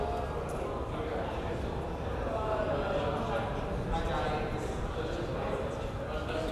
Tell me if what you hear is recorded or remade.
recorded